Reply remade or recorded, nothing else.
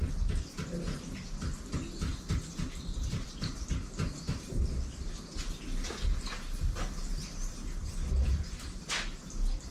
recorded